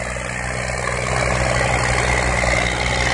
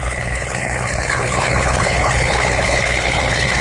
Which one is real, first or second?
first